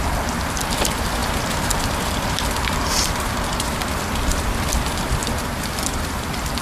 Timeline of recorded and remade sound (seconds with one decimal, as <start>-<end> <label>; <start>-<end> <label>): 0.0-6.6 remade

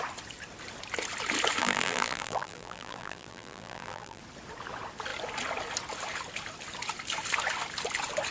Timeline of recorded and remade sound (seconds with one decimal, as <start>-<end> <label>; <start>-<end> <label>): 0.0-1.6 recorded; 1.6-4.2 remade; 4.2-8.3 recorded

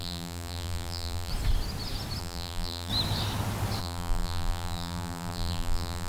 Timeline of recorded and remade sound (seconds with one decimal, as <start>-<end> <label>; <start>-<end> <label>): 0.0-1.3 remade; 1.3-2.2 recorded; 2.2-2.9 remade; 2.9-3.8 recorded; 3.8-6.1 remade

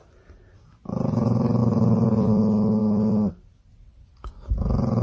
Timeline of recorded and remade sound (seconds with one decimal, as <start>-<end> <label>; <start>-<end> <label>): 0.0-1.6 recorded; 1.6-2.4 remade; 2.4-5.0 recorded

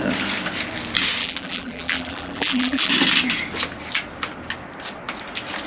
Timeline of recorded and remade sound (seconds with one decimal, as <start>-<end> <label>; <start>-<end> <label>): 0.0-1.2 recorded; 1.2-2.9 remade; 2.9-5.7 recorded

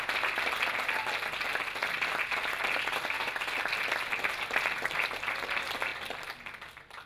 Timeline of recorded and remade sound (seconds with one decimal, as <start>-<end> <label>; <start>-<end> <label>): 0.0-7.1 recorded

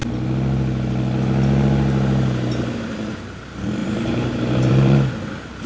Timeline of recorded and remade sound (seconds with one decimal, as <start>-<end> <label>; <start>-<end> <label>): 0.0-3.8 recorded; 3.8-5.1 remade; 5.1-5.7 recorded